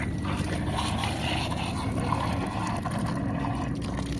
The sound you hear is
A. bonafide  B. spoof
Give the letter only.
A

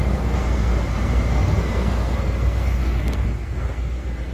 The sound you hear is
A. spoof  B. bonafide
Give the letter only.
A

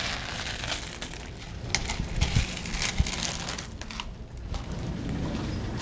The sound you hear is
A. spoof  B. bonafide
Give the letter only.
B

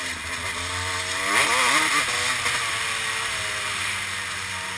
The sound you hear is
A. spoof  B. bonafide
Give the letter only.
B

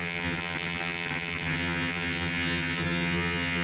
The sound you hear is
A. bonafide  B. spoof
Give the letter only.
B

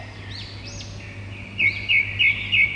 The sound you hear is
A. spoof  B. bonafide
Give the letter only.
B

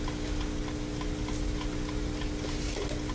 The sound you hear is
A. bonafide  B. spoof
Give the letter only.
A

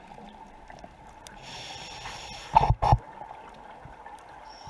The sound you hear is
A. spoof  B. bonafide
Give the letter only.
B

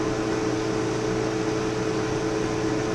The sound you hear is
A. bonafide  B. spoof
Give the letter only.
A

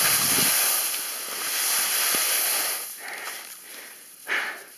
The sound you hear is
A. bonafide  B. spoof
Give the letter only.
A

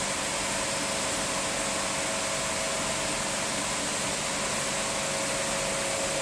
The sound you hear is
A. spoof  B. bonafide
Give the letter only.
B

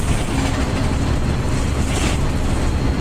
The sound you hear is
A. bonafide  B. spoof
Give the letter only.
A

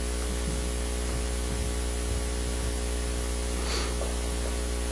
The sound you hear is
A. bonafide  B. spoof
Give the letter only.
A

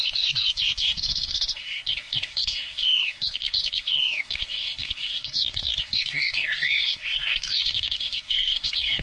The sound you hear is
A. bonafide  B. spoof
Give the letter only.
B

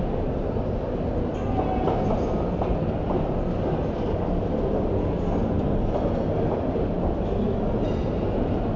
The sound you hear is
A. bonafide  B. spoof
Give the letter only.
A